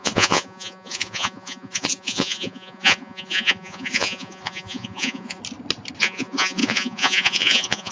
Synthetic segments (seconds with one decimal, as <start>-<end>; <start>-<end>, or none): 0.0-5.4; 6.0-7.9

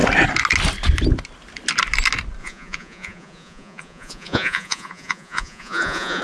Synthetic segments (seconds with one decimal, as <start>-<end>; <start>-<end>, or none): 2.4-6.2

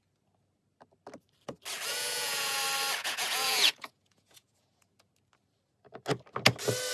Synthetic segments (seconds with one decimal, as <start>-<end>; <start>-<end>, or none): 1.9-2.6; 3.0-5.1

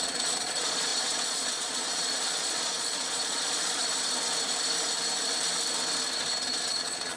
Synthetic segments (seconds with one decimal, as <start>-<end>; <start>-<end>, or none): 0.0-3.8; 6.7-7.2

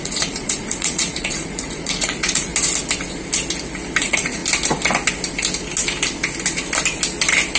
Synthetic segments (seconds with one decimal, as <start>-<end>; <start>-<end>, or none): 0.0-2.5; 4.0-4.4

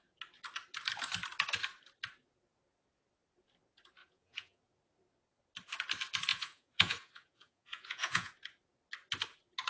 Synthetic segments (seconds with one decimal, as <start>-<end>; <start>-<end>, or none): 4.0-4.6; 6.3-8.3

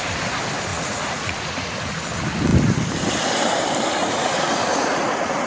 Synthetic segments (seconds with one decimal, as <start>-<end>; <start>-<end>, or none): 0.7-2.0; 4.0-5.5